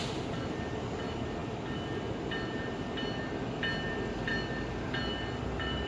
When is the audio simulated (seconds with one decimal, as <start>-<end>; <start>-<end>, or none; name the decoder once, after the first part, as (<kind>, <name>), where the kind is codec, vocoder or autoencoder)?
4.3-5.1 (vocoder, BigVGAN v2)